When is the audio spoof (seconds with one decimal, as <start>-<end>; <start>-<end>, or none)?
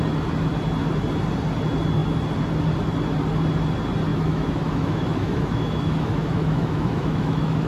4.1-7.7